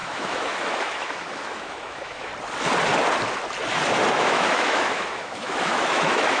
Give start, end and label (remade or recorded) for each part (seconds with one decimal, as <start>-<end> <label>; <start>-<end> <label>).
0.0-2.3 remade; 2.3-4.1 recorded; 4.1-6.4 remade